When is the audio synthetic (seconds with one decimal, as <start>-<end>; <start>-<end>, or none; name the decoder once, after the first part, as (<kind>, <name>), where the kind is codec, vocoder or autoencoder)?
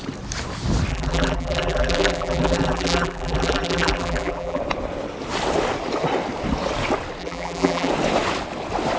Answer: 0.9-4.6 (vocoder, BigVGAN v2); 7.2-7.9